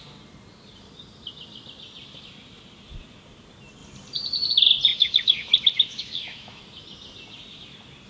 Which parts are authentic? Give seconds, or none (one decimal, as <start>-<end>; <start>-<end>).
0.0-4.9; 6.6-8.1